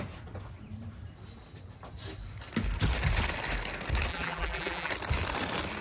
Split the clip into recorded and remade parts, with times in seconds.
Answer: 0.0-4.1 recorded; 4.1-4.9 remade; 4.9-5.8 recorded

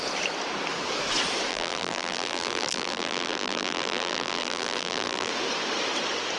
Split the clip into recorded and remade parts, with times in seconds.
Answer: 0.0-1.5 recorded; 1.5-5.3 remade; 5.3-6.4 recorded